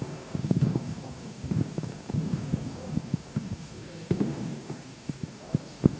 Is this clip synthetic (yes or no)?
yes